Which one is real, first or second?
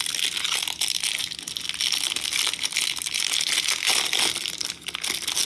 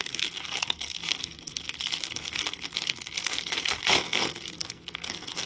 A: first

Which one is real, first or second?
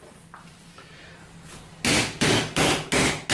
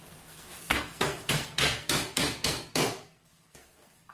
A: first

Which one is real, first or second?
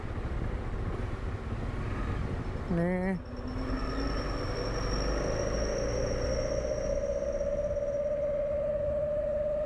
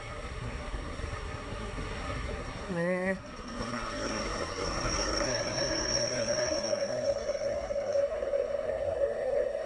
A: first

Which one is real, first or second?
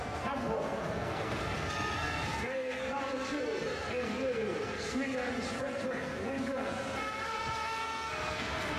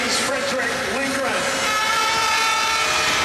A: second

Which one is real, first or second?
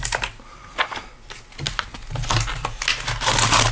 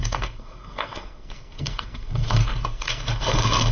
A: first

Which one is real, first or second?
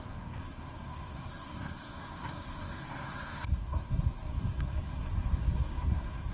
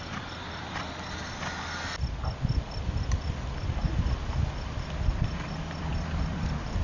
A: second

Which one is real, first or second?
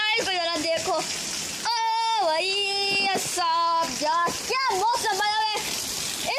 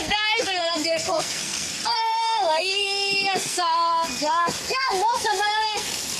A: first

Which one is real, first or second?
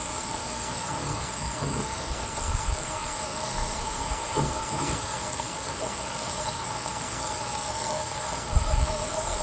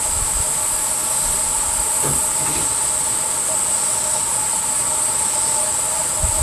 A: second